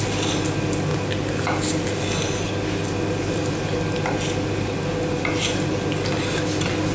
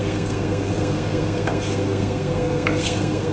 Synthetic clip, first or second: second